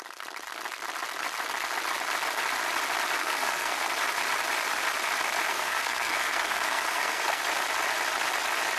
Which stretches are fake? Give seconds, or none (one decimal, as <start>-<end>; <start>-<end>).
3.2-3.9; 5.5-7.4